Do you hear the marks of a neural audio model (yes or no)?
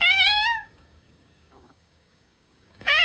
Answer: yes